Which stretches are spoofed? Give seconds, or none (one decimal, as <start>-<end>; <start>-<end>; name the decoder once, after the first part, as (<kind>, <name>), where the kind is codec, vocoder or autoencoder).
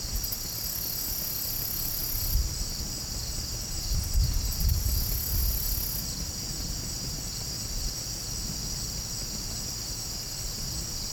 none